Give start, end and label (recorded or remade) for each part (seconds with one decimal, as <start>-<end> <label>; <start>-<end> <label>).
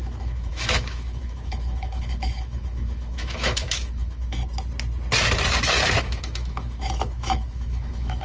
0.0-4.4 remade; 4.4-6.0 recorded; 6.0-8.2 remade